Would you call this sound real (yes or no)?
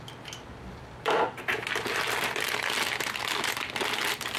yes